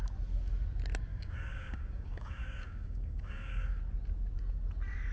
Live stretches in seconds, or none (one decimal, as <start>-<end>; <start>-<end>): 0.0-1.1; 3.8-5.1